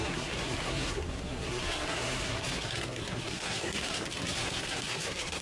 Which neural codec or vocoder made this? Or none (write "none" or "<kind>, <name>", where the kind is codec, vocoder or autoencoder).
codec, SNAC